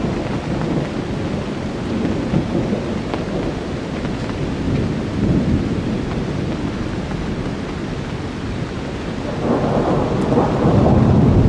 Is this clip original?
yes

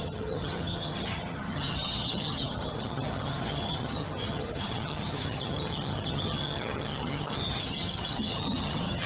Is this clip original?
no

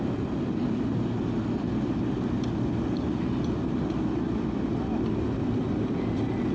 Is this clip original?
yes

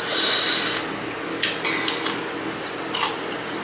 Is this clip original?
yes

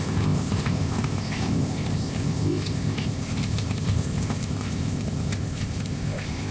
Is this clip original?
no